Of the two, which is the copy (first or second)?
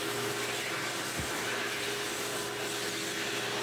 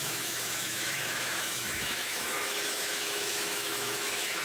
second